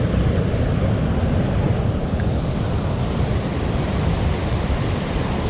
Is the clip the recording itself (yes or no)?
no